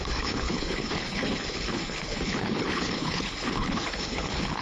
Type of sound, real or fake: fake